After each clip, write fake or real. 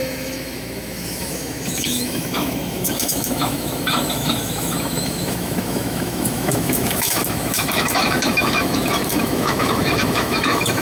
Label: fake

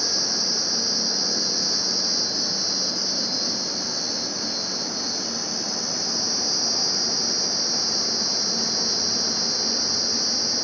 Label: real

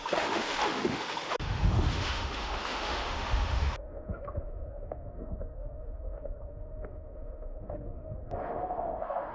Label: fake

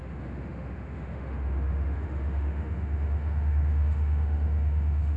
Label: fake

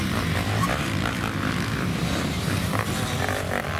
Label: real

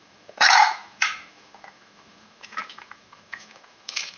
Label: fake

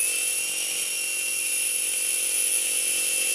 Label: fake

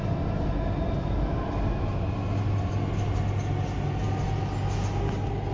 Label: real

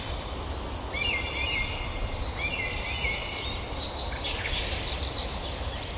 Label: real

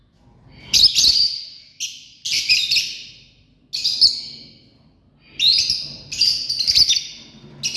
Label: real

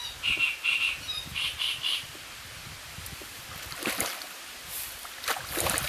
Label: real